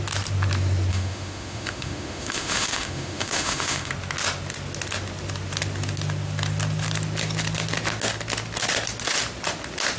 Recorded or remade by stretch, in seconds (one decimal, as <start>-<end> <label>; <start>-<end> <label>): 0.0-0.9 recorded; 0.9-3.9 remade; 3.9-10.0 recorded